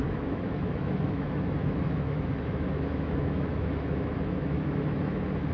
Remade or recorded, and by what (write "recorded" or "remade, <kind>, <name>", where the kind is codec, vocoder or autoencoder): remade, autoencoder, DAC-VAE